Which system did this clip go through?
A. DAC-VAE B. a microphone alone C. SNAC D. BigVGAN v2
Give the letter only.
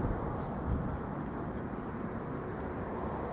B